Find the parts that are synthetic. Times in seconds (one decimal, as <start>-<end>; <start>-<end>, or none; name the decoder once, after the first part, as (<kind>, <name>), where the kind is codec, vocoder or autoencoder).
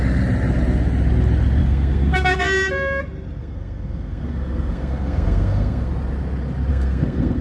1.6-2.4 (codec, SNAC); 3.4-5.9; 6.7-7.4